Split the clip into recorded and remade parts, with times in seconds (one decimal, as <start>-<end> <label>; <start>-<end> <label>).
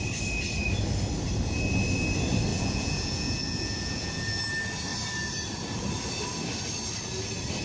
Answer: 0.0-2.5 recorded; 2.5-4.4 remade; 4.4-7.6 recorded